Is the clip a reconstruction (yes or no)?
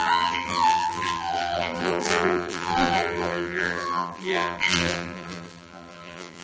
yes